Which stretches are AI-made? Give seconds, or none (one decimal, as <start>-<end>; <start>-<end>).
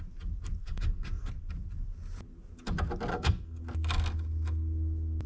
0.6-1.3; 3.1-3.6